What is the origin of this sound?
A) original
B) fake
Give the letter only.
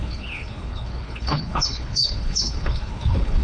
B